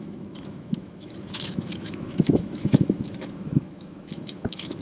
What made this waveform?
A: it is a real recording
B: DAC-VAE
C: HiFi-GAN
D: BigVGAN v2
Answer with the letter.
B